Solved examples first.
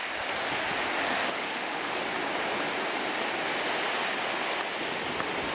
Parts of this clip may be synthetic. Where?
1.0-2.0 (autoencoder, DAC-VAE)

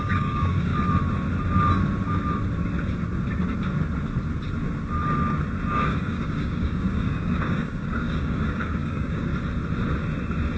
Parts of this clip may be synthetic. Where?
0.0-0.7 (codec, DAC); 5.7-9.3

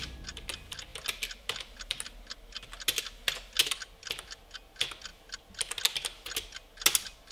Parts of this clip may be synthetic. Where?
none

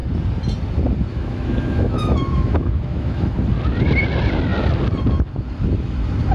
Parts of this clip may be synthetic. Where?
1.1-3.4 (autoencoder, DAC-VAE)